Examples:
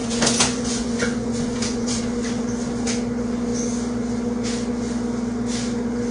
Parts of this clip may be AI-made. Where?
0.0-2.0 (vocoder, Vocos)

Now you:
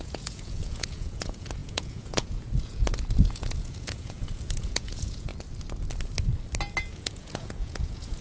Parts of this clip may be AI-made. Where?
0.0-5.3 (vocoder, Vocos); 6.9-8.2